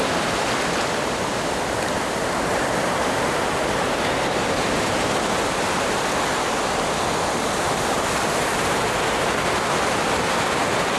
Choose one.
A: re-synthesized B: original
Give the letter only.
B